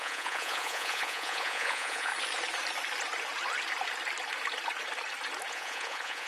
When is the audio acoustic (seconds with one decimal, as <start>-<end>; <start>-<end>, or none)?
2.1-5.5